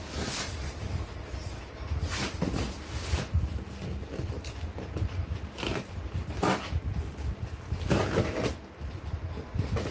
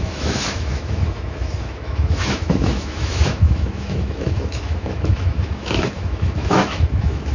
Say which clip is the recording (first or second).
first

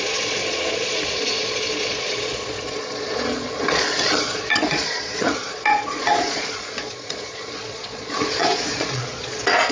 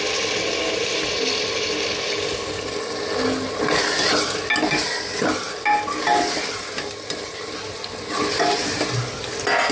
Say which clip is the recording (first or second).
second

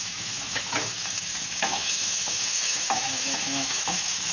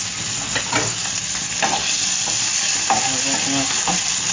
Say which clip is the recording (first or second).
second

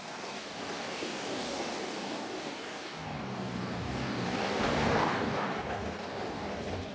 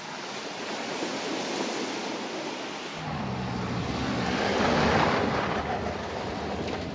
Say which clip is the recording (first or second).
second